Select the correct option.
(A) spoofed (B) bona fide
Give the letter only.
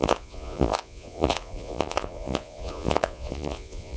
A